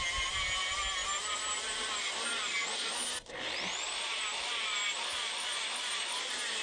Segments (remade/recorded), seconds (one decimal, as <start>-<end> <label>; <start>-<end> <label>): 0.0-6.6 recorded